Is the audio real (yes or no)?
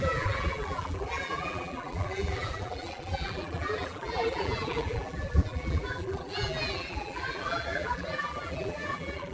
no